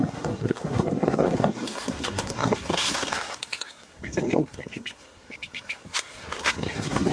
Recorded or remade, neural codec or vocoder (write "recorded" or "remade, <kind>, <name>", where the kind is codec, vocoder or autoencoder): remade, codec, SNAC